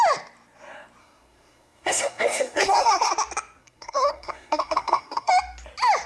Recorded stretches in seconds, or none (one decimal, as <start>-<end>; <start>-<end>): 0.0-1.0; 3.1-3.6; 5.3-6.1